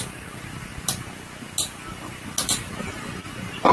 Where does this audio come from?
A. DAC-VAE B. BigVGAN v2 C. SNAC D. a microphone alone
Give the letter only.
D